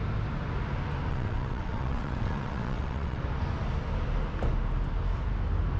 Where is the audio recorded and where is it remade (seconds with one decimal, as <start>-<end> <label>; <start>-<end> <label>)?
0.0-1.1 recorded; 1.1-3.2 remade; 3.2-5.8 recorded

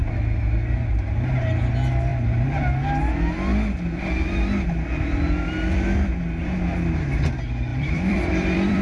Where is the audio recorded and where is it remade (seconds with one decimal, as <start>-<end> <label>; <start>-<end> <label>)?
0.0-7.7 recorded; 7.7-8.8 remade